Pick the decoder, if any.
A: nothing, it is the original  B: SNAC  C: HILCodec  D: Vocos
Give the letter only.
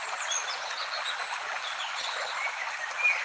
A